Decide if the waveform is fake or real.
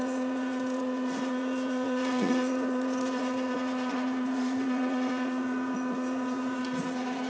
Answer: fake